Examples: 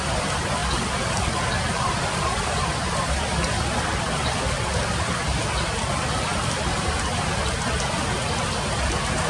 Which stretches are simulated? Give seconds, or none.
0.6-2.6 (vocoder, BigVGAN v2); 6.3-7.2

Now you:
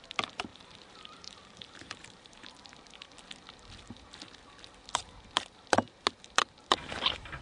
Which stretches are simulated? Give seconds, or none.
0.5-2.5 (vocoder, BigVGAN v2)

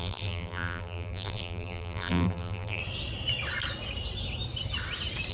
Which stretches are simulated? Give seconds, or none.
0.0-2.8 (vocoder, BigVGAN v2)

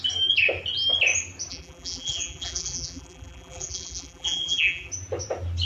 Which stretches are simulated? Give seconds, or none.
1.5-4.9 (vocoder, BigVGAN v2)

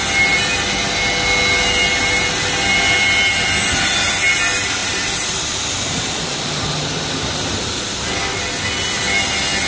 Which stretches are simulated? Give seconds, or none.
4.8-6.8 (vocoder, BigVGAN v2)